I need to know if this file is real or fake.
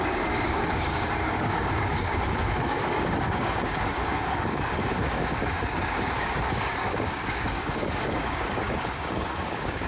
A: fake